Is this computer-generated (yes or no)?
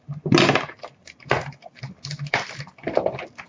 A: no